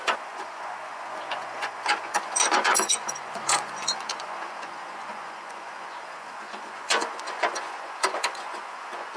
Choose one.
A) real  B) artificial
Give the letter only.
B